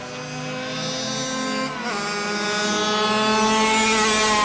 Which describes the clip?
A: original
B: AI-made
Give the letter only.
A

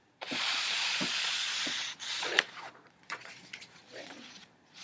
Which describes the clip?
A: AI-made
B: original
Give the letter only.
A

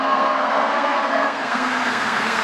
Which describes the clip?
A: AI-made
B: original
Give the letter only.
A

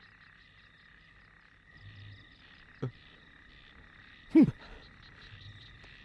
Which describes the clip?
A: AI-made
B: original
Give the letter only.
B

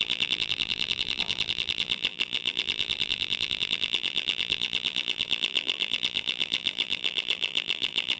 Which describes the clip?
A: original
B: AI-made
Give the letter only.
B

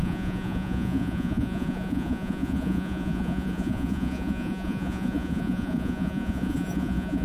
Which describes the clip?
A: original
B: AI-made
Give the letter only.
B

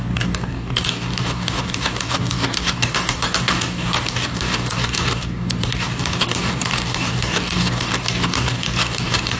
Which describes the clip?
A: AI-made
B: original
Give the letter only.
A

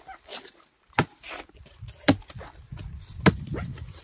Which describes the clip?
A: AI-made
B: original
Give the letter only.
B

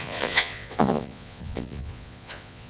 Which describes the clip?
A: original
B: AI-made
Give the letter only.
B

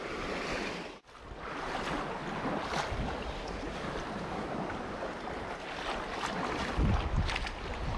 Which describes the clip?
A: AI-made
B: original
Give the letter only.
B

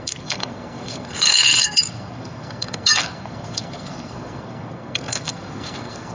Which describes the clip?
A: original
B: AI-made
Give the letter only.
B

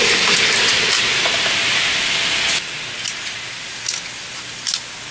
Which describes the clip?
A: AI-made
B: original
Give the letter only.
B